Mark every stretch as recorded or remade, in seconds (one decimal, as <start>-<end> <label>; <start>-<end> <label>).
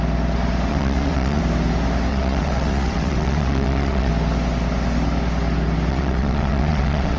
0.0-0.7 recorded; 0.7-1.4 remade; 1.4-2.1 recorded; 2.1-4.1 remade; 4.1-5.9 recorded; 5.9-7.2 remade